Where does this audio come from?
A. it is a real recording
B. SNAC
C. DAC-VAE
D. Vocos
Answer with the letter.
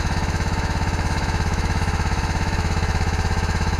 C